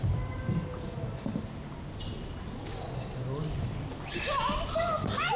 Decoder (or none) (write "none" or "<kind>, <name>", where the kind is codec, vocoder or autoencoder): none